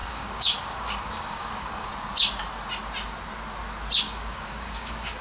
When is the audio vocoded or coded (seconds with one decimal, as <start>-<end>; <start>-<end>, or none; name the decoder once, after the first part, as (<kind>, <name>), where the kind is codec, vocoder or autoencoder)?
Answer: 0.0-1.9 (codec, DAC); 4.0-5.2